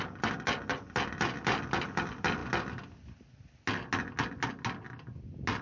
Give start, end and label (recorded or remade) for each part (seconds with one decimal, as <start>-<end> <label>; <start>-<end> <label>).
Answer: 0.0-5.6 recorded